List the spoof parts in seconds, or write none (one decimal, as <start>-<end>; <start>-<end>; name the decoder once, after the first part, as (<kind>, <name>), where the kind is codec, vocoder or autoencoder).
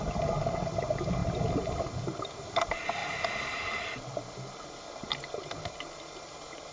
none